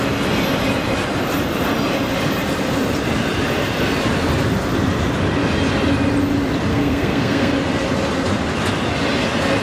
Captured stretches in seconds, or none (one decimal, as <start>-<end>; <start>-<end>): 0.0-6.7; 7.5-9.6